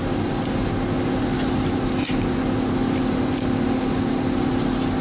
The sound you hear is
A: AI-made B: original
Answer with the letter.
B